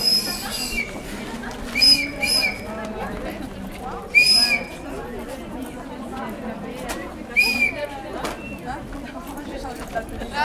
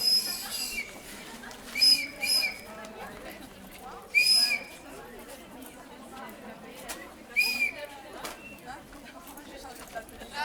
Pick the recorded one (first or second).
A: first